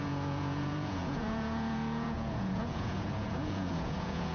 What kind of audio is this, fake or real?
fake